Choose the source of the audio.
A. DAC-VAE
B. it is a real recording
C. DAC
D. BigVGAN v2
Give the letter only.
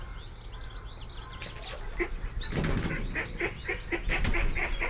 B